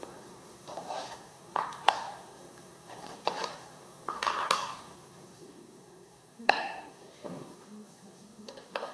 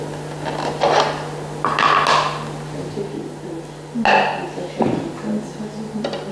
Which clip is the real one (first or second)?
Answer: second